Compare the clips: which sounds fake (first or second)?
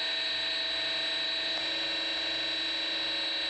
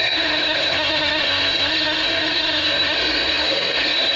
second